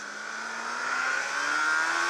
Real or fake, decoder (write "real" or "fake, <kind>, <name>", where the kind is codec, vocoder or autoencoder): real